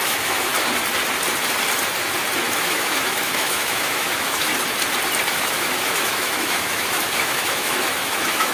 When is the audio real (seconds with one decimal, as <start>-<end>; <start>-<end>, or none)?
0.5-2.5; 4.5-5.3